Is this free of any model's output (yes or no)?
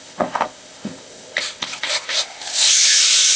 no